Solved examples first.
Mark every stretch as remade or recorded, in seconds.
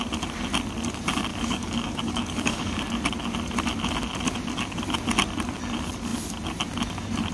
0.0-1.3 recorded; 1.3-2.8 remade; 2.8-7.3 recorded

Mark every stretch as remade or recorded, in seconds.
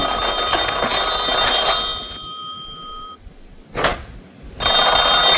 0.0-5.4 recorded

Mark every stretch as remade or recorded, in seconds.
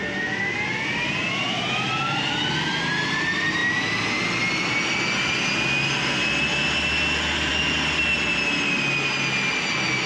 0.0-10.1 recorded